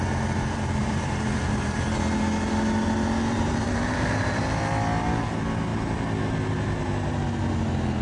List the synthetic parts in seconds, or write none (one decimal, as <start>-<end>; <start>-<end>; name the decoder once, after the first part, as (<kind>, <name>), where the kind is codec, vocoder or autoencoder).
0.8-1.8 (vocoder, BigVGAN v2); 3.2-4.4